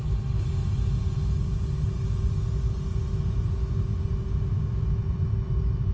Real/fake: real